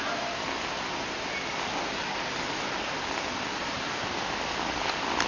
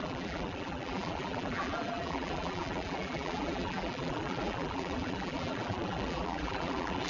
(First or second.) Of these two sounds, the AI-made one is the second